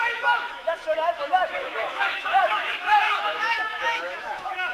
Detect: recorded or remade remade